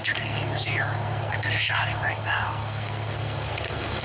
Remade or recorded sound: remade